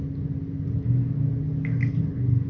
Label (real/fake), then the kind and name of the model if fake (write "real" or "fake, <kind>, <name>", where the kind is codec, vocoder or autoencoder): real